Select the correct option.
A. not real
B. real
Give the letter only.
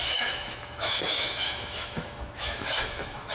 A